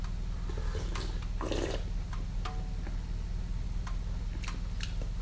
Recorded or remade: recorded